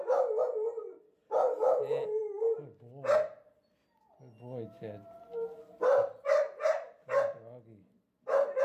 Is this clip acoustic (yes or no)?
yes